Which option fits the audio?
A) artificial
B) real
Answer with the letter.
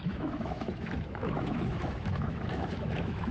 A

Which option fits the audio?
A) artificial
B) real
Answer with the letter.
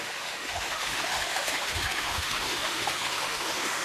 A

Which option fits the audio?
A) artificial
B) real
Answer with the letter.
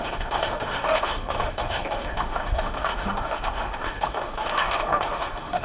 A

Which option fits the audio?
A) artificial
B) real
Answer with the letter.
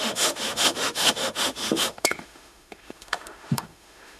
A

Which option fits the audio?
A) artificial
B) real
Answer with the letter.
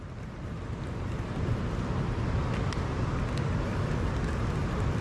B